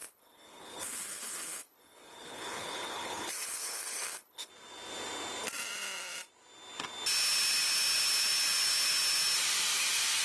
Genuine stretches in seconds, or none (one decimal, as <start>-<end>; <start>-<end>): 4.5-10.2